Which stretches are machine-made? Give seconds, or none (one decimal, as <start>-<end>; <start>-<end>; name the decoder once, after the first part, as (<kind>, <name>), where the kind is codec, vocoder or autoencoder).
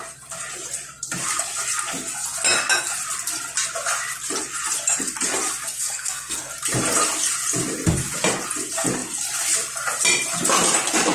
5.7-6.5 (codec, SNAC)